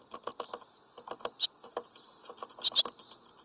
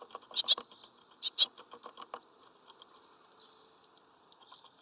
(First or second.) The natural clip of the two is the first